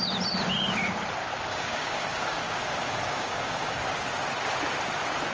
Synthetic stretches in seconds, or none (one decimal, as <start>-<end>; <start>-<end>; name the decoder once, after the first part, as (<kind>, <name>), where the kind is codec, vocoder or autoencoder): 1.2-3.8 (codec, DAC)

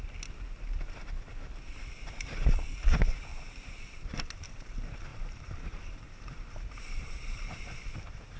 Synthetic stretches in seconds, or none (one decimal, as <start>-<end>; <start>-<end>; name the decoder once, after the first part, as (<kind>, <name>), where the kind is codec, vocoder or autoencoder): 3.3-4.5 (vocoder, BigVGAN v2); 5.1-7.9